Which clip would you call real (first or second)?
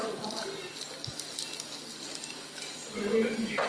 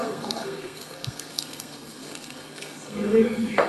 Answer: first